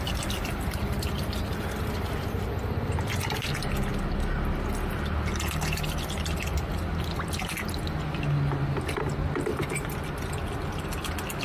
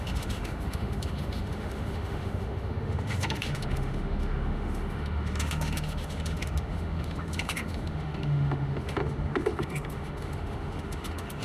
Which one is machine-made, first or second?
second